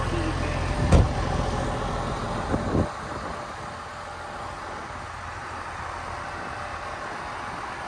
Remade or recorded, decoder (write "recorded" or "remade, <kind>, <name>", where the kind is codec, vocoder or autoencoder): recorded